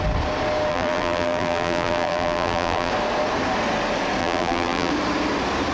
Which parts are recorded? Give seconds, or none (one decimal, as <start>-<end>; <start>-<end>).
0.0-0.7; 2.9-4.2; 4.9-5.7